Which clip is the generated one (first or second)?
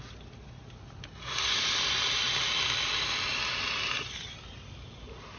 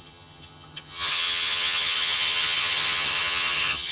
second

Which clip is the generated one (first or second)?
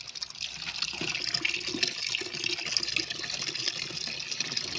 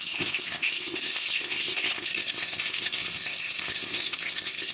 second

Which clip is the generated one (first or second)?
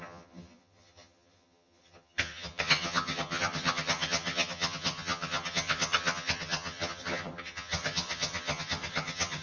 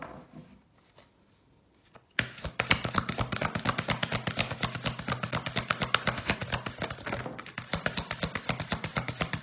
first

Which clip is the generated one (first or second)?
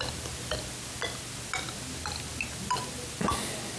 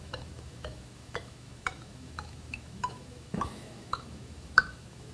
second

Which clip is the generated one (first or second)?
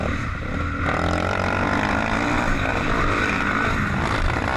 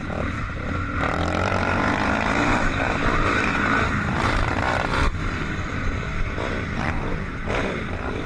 second